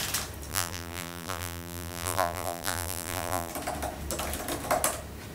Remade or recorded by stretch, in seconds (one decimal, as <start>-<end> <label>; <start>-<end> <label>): 0.0-0.5 recorded; 0.5-3.5 remade; 3.5-5.3 recorded

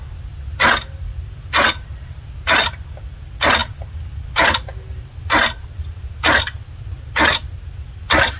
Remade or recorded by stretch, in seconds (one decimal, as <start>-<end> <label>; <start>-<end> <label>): 0.0-8.4 recorded